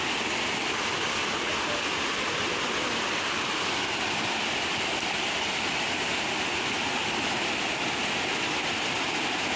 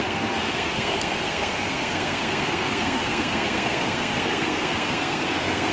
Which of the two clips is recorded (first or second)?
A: first